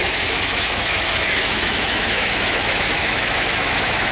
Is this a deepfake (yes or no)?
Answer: yes